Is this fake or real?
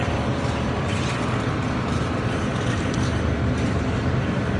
fake